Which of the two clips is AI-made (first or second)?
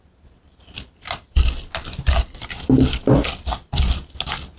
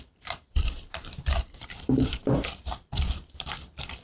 second